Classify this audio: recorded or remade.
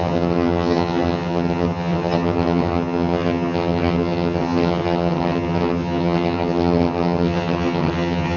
remade